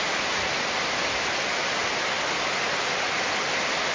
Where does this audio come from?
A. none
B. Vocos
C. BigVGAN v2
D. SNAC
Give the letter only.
A